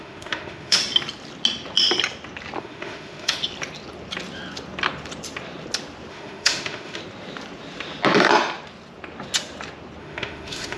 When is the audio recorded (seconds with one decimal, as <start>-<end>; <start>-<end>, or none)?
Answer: 0.8-2.6; 3.4-6.1; 7.0-10.0